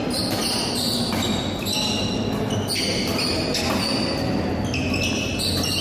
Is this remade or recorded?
recorded